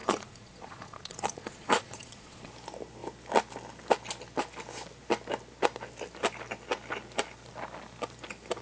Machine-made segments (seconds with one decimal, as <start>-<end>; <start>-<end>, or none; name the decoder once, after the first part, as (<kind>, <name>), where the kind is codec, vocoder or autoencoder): 0.0-2.5 (vocoder, Vocos)